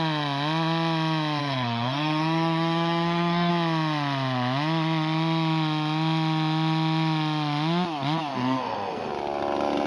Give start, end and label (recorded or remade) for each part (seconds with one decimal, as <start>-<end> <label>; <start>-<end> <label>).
0.0-1.4 recorded; 1.4-3.5 remade; 3.5-8.3 recorded; 8.3-9.1 remade; 9.1-9.9 recorded